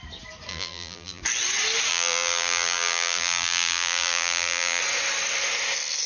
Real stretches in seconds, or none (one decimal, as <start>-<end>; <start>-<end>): 0.0-0.5; 1.2-1.9; 4.8-6.1